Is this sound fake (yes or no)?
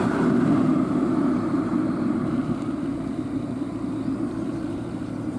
yes